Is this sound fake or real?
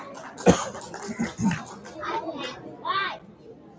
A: real